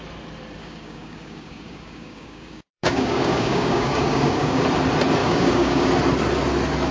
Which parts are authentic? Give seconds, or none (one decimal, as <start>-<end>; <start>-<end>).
0.0-0.6; 4.6-5.2; 5.9-6.9